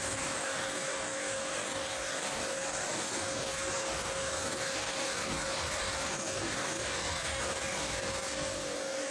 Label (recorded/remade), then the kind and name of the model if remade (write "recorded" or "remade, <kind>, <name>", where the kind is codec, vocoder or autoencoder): remade, codec, DAC